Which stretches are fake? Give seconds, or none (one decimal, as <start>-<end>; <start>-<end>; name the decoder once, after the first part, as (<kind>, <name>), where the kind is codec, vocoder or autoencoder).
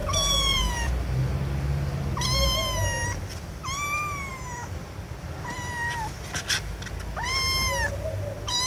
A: 0.0-0.9 (vocoder, Vocos)